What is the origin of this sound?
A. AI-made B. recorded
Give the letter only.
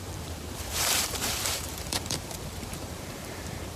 A